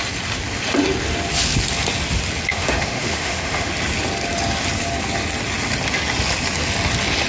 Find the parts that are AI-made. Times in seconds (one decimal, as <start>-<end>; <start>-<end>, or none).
2.5-3.7